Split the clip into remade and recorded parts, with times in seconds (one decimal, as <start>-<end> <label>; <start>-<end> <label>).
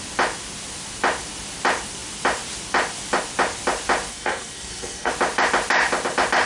0.0-4.1 recorded; 4.1-5.1 remade; 5.1-6.5 recorded